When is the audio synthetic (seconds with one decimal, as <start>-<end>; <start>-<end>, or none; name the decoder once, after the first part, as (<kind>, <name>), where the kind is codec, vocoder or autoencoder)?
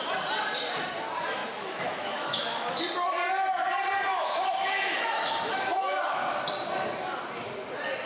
1.4-2.8 (autoencoder, DAC-VAE); 4.1-6.3